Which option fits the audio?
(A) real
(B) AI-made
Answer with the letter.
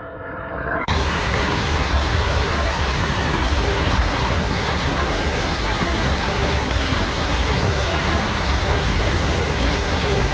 B